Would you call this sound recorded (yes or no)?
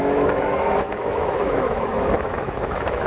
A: no